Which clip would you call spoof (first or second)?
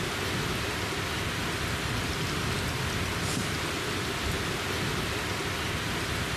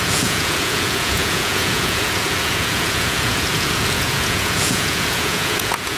second